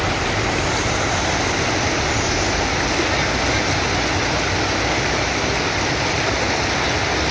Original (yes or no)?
yes